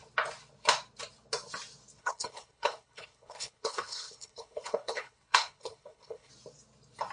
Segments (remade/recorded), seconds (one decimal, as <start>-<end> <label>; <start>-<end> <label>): 0.0-2.0 recorded; 2.0-6.3 remade; 6.3-7.1 recorded